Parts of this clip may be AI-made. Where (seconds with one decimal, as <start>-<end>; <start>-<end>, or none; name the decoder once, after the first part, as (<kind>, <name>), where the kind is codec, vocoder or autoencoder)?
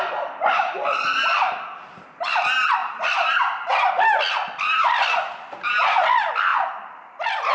none